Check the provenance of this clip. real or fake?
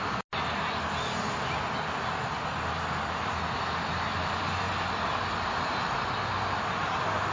real